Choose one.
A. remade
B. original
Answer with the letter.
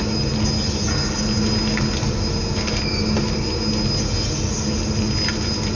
B